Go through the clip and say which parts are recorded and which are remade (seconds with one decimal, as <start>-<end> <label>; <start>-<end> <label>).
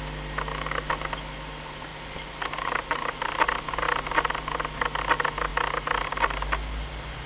0.0-7.3 recorded